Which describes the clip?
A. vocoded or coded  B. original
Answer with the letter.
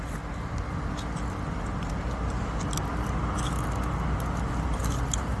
B